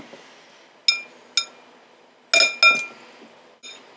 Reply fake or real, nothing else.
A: real